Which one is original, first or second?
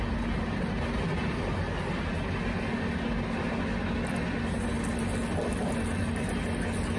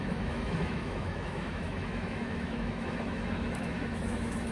first